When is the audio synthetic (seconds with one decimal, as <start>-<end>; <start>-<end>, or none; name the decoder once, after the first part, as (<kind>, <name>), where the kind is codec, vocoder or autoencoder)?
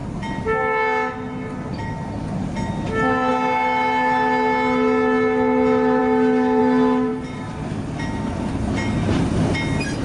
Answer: none